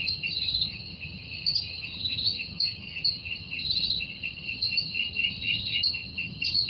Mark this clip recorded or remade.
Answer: remade